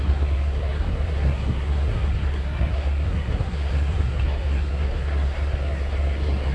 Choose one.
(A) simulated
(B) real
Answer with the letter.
A